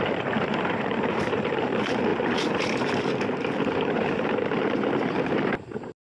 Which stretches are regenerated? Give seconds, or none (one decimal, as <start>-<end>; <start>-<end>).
0.0-6.1